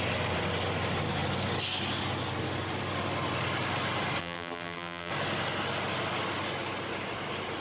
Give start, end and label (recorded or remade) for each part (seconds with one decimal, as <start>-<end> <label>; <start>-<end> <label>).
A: 0.0-4.2 recorded; 4.2-5.1 remade; 5.1-7.6 recorded